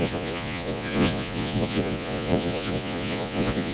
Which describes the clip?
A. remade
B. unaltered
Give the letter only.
A